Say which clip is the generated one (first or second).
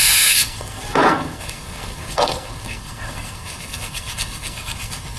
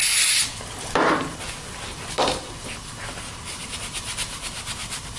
first